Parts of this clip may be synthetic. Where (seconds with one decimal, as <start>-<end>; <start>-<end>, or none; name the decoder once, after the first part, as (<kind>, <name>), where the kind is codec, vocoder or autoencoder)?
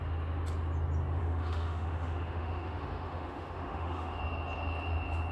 1.2-4.2 (autoencoder, DAC-VAE)